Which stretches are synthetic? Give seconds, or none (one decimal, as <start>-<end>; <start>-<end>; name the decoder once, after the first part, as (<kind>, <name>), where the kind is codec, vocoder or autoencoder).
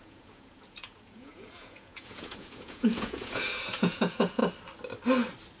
0.0-4.4 (vocoder, Vocos)